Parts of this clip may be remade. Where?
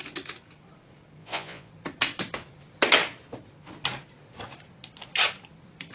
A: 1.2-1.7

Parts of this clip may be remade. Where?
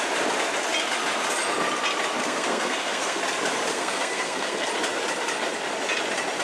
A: 2.2-3.2; 3.7-4.7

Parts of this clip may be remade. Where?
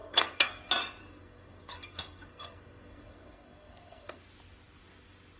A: 0.0-0.6; 1.0-4.2